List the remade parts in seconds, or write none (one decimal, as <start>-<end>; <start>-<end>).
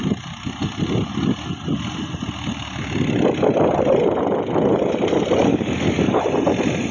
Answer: 5.5-6.2